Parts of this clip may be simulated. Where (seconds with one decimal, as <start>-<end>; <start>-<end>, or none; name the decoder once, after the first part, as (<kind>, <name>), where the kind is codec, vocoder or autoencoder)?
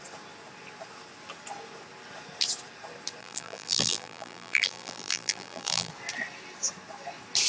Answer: 3.2-5.9 (vocoder, BigVGAN v2)